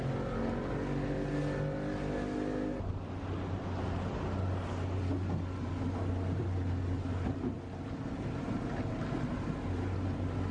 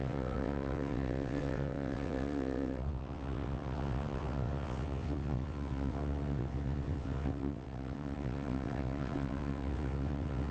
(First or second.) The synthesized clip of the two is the second